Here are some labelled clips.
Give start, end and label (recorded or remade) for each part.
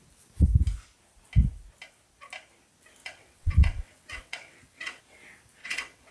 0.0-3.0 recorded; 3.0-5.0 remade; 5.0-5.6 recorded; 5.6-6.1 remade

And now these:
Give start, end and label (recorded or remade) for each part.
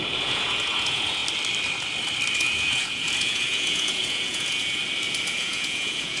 0.0-1.2 remade; 1.2-2.3 recorded; 2.3-4.8 remade; 4.8-5.3 recorded; 5.3-6.2 remade